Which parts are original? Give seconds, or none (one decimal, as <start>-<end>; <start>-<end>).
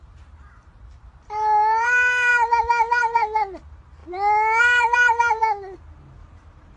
2.3-3.0; 4.0-4.6; 5.4-6.3